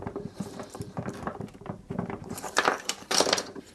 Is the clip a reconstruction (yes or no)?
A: yes